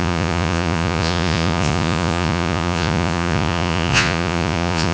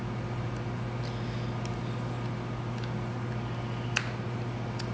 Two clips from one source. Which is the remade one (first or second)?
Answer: first